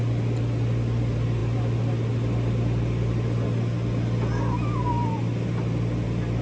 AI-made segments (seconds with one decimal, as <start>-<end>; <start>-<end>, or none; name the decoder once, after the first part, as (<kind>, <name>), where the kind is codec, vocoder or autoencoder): none